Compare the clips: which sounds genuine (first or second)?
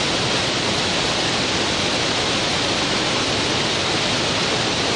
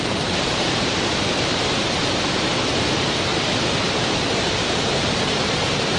first